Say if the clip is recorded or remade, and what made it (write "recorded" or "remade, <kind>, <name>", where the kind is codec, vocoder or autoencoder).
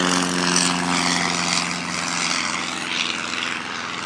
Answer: recorded